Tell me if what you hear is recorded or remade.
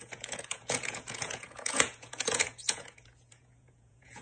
remade